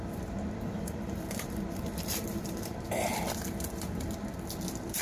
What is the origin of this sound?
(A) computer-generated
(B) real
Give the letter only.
A